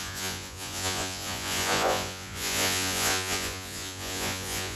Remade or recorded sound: remade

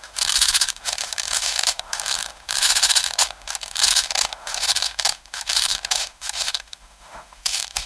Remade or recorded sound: remade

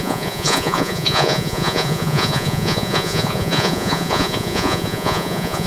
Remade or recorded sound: remade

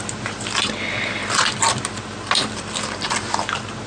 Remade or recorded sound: recorded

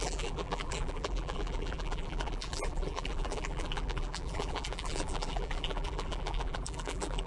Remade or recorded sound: remade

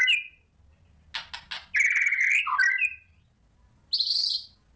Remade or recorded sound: recorded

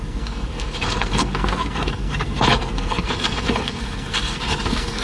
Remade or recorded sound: remade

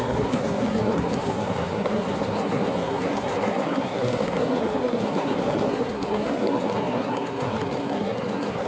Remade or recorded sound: remade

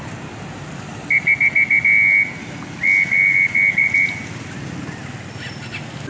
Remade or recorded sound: recorded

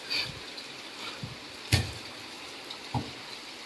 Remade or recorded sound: recorded